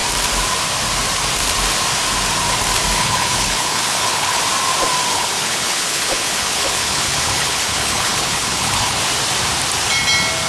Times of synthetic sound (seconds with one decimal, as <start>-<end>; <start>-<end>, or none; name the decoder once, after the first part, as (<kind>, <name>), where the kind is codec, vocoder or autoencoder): 3.0-4.4 (codec, HILCodec); 5.1-9.0